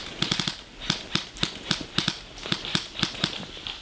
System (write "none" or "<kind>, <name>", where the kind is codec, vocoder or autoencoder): none